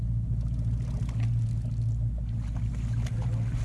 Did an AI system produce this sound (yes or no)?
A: no